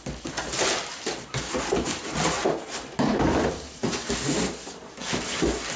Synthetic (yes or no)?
no